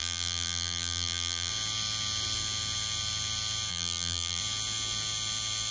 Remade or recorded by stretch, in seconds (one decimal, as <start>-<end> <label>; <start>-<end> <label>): 0.0-1.5 remade; 1.5-3.7 recorded; 3.7-4.4 remade; 4.4-5.7 recorded